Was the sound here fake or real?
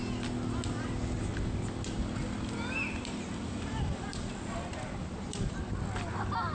real